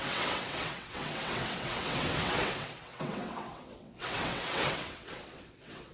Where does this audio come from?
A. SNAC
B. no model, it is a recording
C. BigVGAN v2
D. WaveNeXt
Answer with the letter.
D